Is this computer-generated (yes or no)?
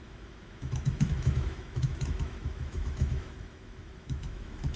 yes